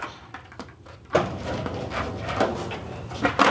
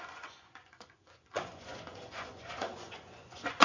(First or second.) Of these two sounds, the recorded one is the first